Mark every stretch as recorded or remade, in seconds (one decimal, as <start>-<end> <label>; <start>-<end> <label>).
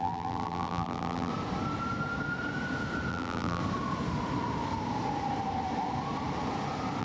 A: 0.0-1.3 remade; 1.3-3.1 recorded; 3.1-3.6 remade; 3.6-7.0 recorded